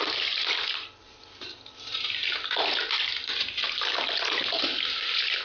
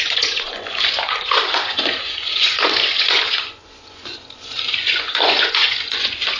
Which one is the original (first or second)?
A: first